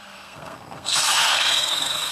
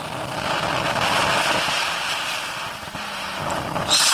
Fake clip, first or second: first